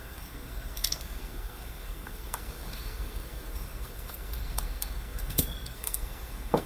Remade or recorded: remade